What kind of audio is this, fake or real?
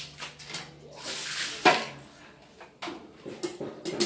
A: real